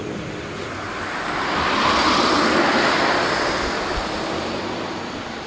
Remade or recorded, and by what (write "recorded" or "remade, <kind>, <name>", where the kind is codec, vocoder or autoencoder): recorded